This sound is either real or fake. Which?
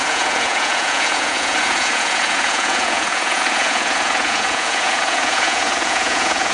fake